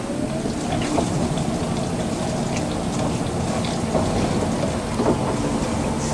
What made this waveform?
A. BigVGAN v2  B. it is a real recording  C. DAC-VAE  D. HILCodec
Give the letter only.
B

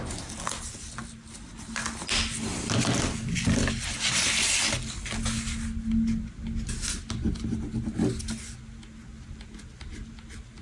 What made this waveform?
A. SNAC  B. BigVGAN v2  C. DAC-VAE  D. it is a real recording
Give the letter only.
D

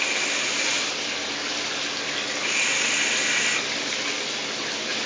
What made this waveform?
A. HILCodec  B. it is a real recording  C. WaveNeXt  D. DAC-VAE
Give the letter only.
B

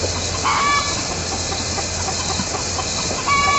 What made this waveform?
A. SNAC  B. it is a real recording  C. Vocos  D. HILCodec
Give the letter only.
B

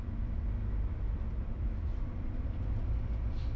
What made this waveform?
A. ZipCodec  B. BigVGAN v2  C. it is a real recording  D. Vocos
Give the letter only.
B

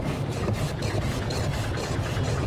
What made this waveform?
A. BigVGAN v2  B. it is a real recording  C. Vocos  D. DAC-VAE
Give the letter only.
B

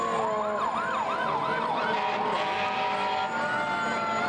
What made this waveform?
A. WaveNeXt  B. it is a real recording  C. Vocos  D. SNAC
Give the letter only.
B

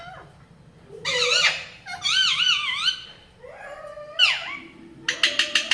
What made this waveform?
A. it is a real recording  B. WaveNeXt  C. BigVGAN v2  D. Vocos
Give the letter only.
A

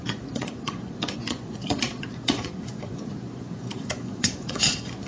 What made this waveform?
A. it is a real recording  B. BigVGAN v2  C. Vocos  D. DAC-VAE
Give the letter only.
C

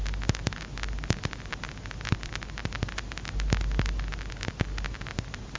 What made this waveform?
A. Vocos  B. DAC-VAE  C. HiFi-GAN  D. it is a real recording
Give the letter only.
D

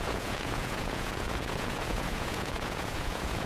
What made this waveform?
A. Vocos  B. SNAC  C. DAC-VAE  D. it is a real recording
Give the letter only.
A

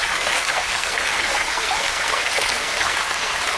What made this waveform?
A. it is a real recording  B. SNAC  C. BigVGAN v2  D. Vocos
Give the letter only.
B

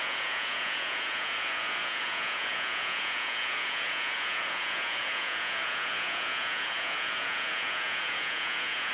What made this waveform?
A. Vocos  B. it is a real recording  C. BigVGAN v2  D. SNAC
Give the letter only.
A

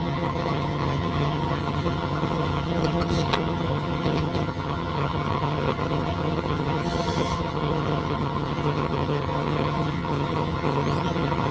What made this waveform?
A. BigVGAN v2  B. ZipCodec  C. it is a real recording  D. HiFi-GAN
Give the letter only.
D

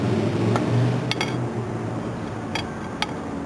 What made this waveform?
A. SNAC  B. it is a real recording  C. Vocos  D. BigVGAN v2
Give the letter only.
B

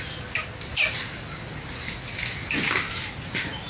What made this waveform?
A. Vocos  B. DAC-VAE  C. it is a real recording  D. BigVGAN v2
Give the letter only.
C